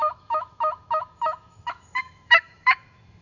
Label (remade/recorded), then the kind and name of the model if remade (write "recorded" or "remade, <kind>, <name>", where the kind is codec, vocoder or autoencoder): remade, autoencoder, DAC-VAE